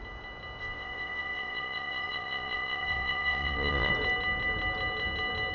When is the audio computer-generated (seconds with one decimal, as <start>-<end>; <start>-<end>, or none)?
0.6-3.9